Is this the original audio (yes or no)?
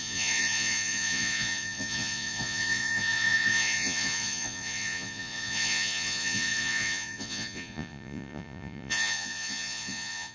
no